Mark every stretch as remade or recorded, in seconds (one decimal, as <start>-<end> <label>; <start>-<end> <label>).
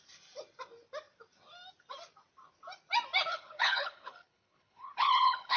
0.0-3.3 recorded; 3.3-5.6 remade